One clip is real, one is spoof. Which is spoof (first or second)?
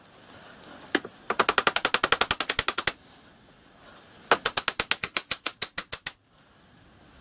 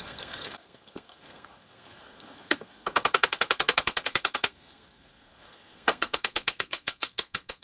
second